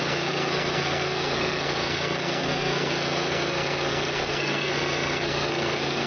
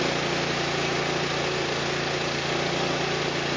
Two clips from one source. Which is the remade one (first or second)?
first